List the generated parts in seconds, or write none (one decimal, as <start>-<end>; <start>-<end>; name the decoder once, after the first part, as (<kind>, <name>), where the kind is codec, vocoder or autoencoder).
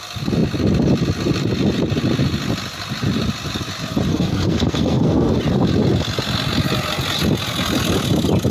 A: 4.1-5.4 (codec, SNAC)